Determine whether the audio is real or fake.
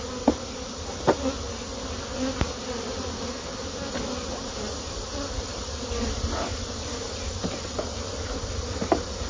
real